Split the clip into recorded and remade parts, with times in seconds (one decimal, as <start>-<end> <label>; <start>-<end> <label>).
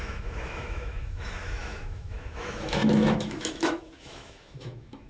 0.0-5.1 remade